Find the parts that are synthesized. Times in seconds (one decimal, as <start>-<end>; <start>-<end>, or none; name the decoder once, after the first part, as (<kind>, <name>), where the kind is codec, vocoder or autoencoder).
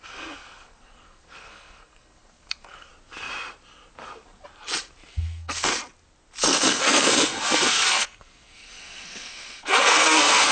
0.0-2.9 (codec, SNAC); 5.1-5.7; 6.4-10.5